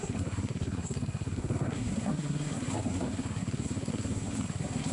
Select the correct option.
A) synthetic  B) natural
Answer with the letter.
A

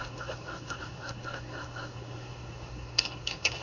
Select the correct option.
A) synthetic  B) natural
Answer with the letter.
A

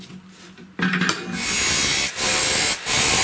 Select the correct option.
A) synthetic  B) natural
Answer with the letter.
B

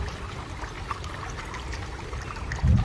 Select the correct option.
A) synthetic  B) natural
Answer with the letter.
B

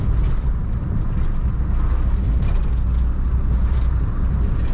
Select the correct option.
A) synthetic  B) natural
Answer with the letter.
B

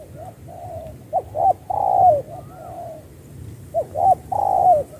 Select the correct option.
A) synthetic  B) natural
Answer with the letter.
B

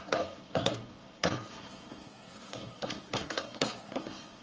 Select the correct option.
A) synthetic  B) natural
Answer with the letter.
A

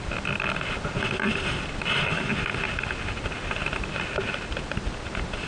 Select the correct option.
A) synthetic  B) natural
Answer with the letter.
B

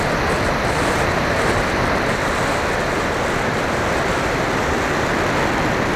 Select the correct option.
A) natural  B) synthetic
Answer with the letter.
A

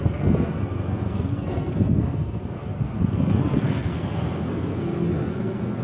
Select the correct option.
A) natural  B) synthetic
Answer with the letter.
B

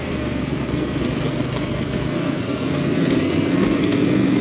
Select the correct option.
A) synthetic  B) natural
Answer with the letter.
A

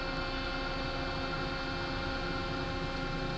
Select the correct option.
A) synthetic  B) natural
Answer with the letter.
B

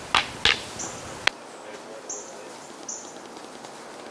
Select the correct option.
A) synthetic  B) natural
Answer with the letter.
B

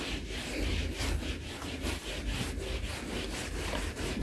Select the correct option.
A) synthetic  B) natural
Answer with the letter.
B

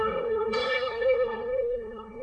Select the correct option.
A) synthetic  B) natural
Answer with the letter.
A